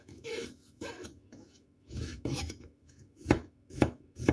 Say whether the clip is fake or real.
fake